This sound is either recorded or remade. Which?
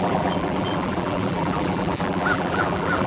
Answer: remade